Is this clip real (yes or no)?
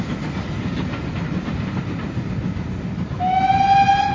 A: yes